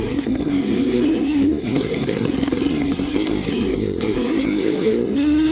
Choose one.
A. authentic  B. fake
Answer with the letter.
B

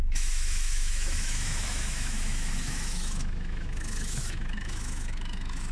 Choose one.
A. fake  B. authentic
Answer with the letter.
A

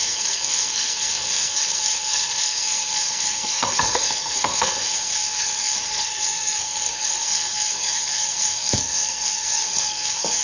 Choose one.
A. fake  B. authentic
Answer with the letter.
A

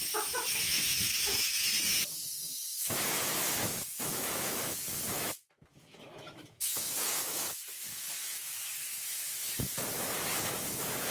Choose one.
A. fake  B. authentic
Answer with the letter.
A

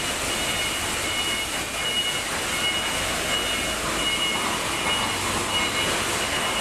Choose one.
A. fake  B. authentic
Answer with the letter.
B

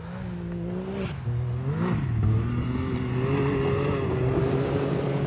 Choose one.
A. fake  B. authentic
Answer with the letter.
B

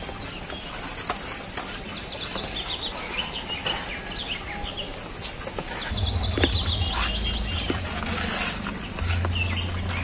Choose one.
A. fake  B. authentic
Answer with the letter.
B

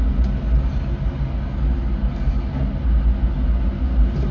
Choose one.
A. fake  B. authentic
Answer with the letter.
B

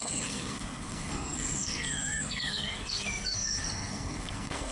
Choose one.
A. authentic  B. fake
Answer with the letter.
B